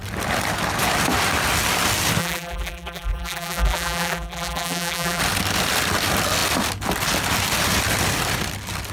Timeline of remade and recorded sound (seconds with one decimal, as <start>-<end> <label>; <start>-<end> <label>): 0.0-2.2 recorded; 2.2-5.2 remade; 5.2-8.9 recorded